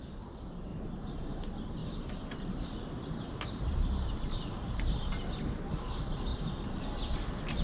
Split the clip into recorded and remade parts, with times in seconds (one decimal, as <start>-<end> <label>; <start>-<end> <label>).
0.0-0.7 recorded; 0.7-1.4 remade; 1.4-1.8 recorded; 1.8-5.1 remade; 5.1-6.3 recorded; 6.3-6.9 remade; 6.9-7.6 recorded